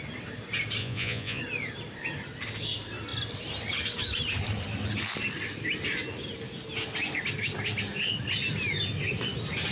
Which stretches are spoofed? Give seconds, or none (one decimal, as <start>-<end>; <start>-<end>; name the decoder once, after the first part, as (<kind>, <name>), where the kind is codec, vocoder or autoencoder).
0.8-1.4 (vocoder, Vocos)